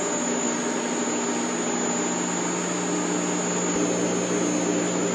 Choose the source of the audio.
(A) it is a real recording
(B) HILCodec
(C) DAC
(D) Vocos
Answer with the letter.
A